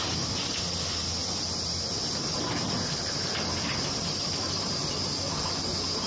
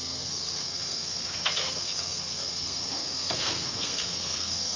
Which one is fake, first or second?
second